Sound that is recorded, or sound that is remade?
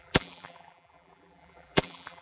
remade